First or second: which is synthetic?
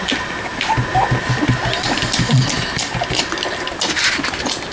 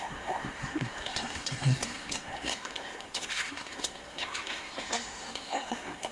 second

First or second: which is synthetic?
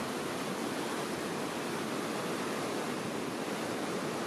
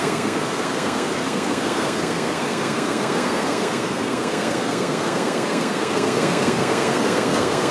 second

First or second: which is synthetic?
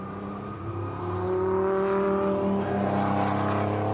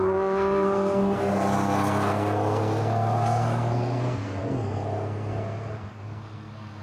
second